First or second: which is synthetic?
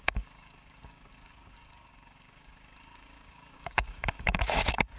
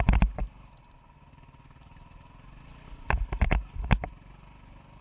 first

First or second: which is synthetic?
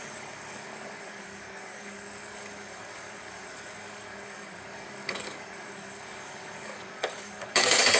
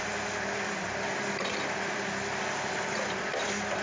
first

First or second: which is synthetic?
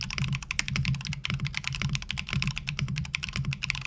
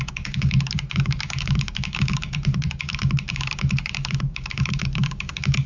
second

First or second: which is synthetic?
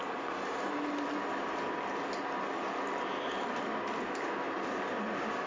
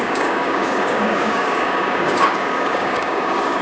second